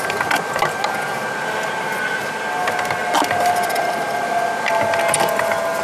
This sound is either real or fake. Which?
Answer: real